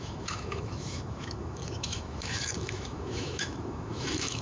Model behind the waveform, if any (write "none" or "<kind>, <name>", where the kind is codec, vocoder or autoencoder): autoencoder, DAC-VAE